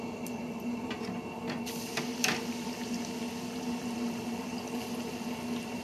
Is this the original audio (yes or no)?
yes